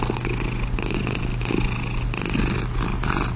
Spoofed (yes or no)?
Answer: no